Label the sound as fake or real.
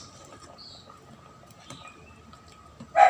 real